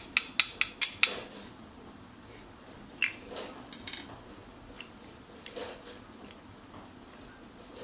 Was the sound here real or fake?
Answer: real